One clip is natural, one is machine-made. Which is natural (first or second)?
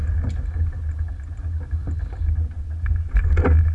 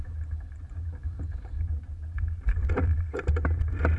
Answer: first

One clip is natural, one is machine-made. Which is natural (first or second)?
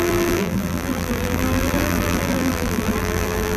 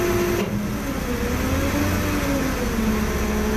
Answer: second